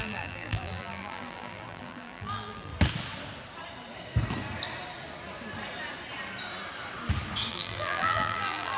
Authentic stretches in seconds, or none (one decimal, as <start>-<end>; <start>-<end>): 2.7-7.5